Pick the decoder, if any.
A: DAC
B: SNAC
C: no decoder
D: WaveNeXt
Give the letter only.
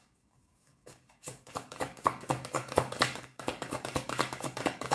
A